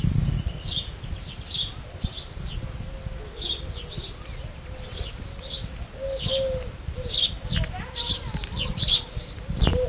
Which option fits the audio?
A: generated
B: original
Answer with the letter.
B